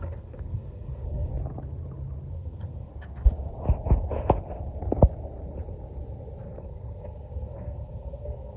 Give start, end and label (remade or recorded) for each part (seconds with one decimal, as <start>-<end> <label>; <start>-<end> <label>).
0.0-1.3 remade; 1.3-2.3 recorded; 2.3-2.9 remade; 2.9-6.6 recorded; 6.6-8.6 remade

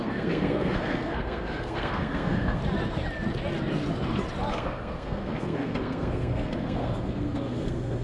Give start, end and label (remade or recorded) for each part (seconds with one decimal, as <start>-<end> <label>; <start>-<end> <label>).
0.0-2.6 remade; 2.6-4.5 recorded; 4.5-8.0 remade

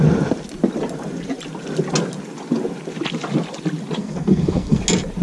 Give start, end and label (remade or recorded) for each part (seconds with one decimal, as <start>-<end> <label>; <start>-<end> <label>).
0.0-4.0 recorded; 4.0-4.8 remade; 4.8-5.2 recorded

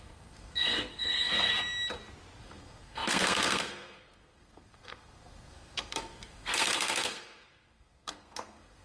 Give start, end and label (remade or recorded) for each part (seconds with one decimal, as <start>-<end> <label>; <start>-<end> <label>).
0.0-1.5 remade; 1.5-2.4 recorded; 2.4-8.8 remade

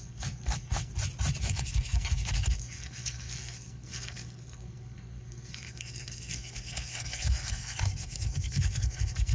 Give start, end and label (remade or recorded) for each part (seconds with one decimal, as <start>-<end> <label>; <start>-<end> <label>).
0.0-0.9 remade; 0.9-1.4 recorded; 1.4-9.3 remade

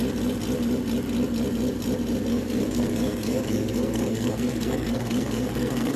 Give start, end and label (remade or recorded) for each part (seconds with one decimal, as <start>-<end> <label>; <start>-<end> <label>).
0.0-2.3 recorded; 2.3-6.0 remade